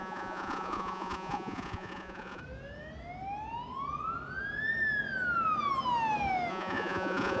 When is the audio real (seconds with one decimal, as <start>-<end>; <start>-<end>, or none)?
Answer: 2.4-6.5

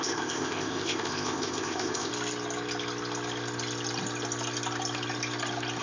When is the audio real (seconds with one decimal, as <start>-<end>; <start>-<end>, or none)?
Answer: 2.1-5.8